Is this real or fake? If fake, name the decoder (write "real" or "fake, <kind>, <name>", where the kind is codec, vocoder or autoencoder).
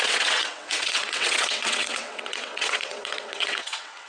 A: fake, vocoder, WaveNeXt